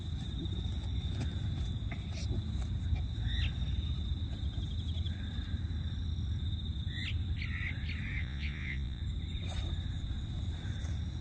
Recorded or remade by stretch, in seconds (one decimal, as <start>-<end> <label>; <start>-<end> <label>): 0.0-8.2 recorded; 8.2-9.0 remade; 9.0-11.2 recorded